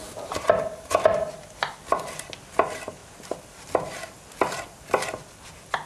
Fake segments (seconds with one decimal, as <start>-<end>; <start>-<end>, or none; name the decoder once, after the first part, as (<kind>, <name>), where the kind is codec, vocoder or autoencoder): 0.0-1.3 (vocoder, BigVGAN v2)